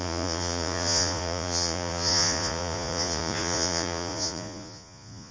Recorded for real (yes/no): no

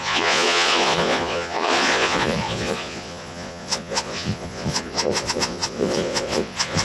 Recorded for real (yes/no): no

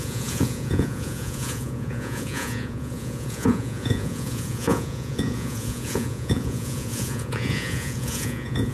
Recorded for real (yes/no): no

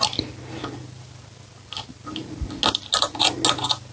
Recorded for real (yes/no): yes